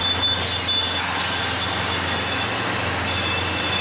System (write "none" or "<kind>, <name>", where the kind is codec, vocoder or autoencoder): none